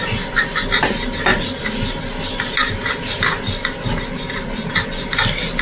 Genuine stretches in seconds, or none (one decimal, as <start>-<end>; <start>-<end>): 0.0-5.6